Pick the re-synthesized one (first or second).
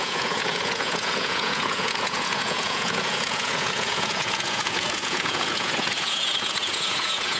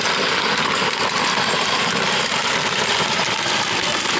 first